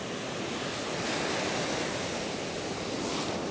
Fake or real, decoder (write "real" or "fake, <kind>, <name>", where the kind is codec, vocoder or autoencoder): real